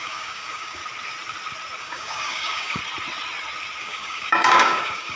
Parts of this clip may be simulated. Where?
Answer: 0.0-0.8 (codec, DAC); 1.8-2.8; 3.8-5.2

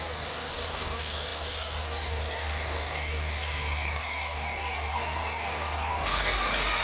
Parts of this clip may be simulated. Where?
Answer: 0.0-6.8 (codec, DAC)

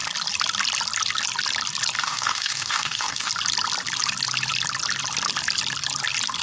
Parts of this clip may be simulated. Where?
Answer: 2.0-3.3 (codec, DAC)

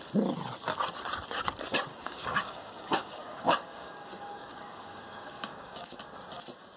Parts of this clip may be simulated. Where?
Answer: 1.9-6.0 (codec, DAC)

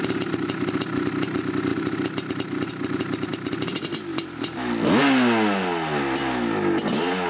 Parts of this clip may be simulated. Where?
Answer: none

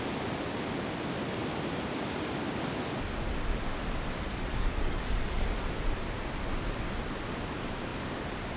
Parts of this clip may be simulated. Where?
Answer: 4.3-5.6 (codec, DAC)

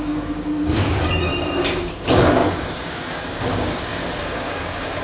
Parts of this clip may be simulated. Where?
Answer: 0.0-1.3 (codec, DAC); 1.9-5.0

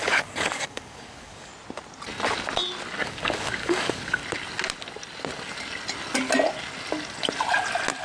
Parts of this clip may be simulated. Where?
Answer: 0.0-1.5 (codec, DAC); 3.0-4.2